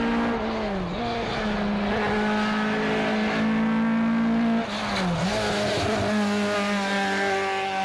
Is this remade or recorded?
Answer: recorded